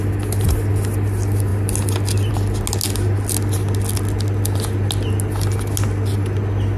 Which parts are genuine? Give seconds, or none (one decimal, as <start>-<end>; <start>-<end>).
0.0-6.8